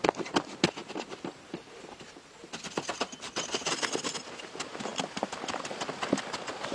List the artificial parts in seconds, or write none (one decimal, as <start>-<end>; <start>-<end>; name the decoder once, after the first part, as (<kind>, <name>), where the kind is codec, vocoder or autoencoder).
none

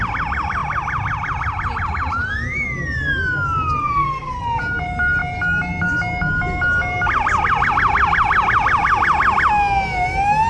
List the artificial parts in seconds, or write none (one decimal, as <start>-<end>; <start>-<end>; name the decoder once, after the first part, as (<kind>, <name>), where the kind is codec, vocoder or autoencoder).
3.8-4.4 (codec, SNAC)

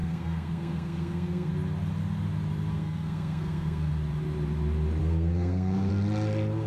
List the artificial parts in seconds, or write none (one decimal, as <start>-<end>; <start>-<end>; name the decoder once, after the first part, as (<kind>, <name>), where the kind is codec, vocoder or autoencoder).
0.0-1.5 (codec, SNAC); 2.7-3.9; 5.0-5.9